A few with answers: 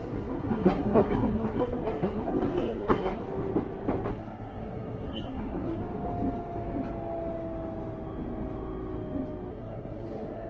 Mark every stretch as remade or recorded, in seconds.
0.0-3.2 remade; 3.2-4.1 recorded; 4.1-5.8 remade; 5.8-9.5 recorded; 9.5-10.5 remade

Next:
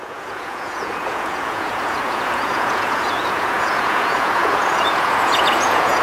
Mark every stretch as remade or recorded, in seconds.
0.0-6.0 remade

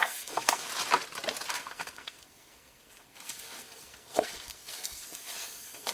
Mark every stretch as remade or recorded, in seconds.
0.0-0.7 remade; 0.7-1.5 recorded; 1.5-5.9 remade

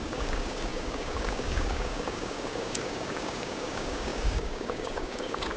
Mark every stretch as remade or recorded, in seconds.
0.0-5.6 remade